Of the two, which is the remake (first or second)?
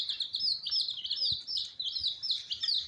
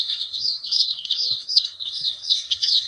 second